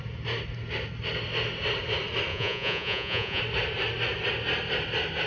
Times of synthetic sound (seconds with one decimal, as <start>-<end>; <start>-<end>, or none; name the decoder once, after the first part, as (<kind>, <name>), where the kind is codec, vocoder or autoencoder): 2.3-3.4 (vocoder, Vocos)